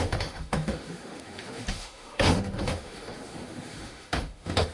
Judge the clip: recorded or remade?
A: remade